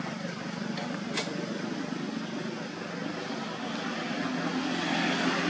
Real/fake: real